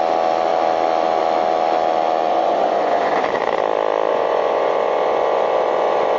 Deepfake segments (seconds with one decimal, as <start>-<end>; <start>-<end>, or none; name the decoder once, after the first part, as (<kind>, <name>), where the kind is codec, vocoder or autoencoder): 2.3-3.4 (vocoder, Vocos); 4.1-6.2